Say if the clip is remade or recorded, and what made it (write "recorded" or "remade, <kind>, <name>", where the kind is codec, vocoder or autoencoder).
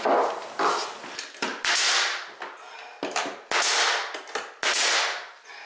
recorded